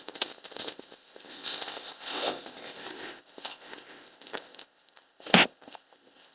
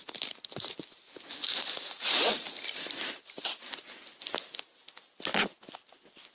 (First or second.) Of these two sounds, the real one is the second